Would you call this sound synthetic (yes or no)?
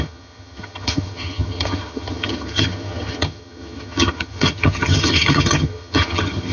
yes